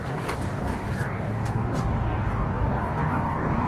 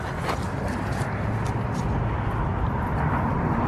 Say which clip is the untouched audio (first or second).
second